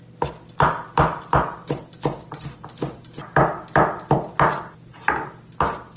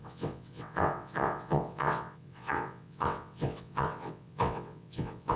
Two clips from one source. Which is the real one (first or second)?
first